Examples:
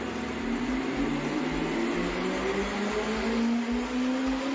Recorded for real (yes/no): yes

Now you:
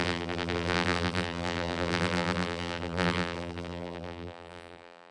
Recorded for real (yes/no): no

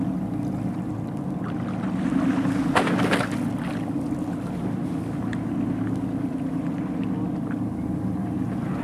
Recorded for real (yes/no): yes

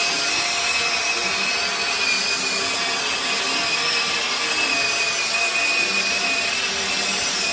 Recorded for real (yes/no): yes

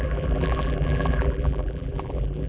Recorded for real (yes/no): no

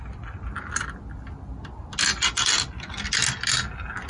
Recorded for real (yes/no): yes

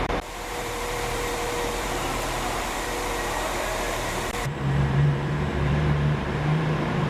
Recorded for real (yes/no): no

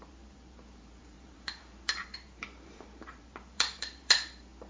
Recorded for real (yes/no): no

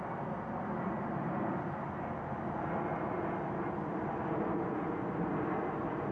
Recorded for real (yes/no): yes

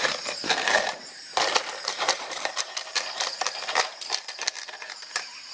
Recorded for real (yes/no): no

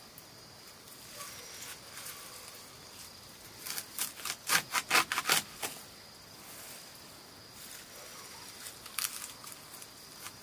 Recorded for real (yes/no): yes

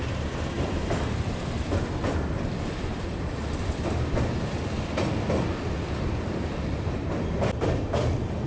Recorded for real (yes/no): yes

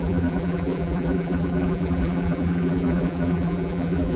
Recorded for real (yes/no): no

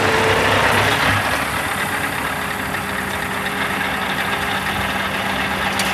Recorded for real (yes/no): yes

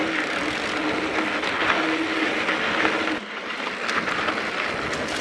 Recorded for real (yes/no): yes